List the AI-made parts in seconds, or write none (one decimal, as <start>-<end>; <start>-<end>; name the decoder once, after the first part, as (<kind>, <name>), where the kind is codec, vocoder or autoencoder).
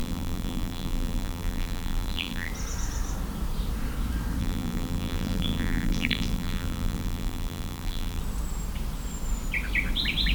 0.0-2.5 (vocoder, BigVGAN v2); 4.4-8.2